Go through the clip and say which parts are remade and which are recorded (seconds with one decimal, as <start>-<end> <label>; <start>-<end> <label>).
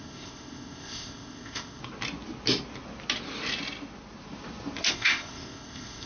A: 0.0-1.8 remade; 1.8-4.9 recorded; 4.9-6.1 remade